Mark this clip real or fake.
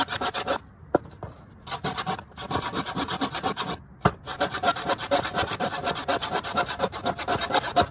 real